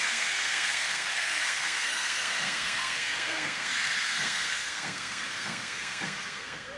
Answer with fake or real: fake